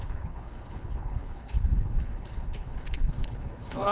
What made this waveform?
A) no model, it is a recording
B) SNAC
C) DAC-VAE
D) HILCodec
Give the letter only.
D